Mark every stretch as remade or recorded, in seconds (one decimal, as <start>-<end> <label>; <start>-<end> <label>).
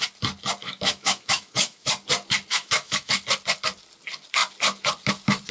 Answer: 0.0-0.6 recorded; 0.6-1.9 remade; 1.9-2.5 recorded; 2.5-3.1 remade; 3.1-5.5 recorded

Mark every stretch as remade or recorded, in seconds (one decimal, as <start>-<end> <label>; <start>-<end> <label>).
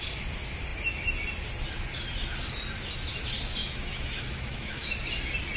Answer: 0.0-3.6 recorded; 3.6-4.9 remade; 4.9-5.6 recorded